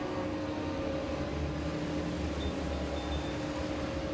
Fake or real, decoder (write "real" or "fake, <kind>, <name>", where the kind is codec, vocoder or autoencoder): real